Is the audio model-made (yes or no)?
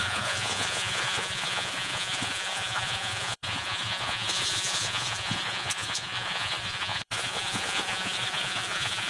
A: yes